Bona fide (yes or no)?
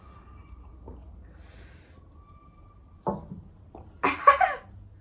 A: yes